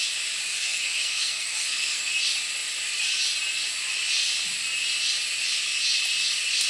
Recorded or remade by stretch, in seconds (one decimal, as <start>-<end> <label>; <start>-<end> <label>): 0.0-0.5 recorded; 0.5-2.1 remade; 2.1-6.7 recorded